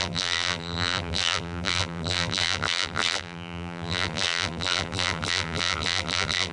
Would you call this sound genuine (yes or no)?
no